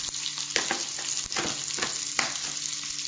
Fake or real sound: real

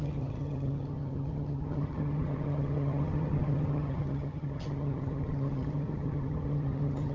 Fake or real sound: fake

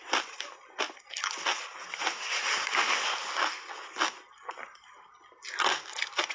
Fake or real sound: real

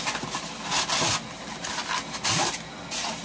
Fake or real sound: real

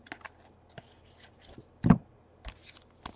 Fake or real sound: real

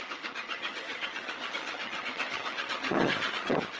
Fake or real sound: fake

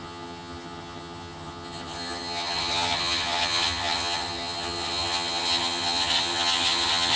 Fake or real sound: fake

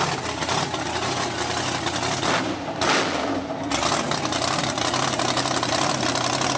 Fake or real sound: real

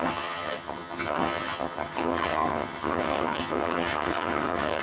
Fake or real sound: fake